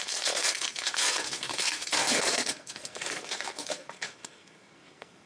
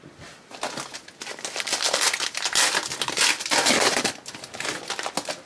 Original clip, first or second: second